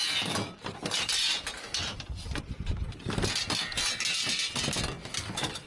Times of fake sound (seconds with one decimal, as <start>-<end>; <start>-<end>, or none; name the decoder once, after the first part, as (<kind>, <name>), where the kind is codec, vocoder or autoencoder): none